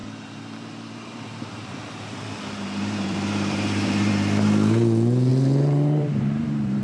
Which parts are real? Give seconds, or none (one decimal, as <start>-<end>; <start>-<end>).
4.1-5.3